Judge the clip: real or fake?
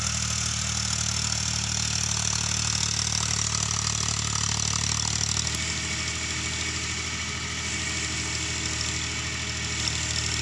real